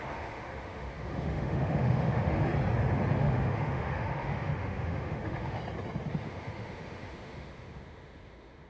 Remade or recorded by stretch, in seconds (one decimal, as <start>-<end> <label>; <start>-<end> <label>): 0.0-2.5 remade; 2.5-3.2 recorded; 3.2-5.6 remade; 5.6-6.1 recorded; 6.1-8.7 remade